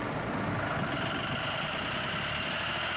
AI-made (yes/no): no